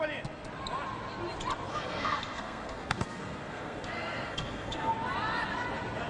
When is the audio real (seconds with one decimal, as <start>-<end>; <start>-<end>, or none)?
0.0-1.7; 4.9-6.1